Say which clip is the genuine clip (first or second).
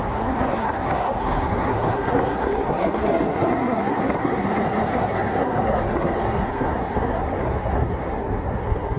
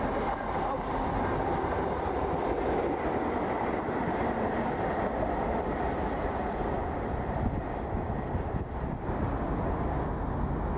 second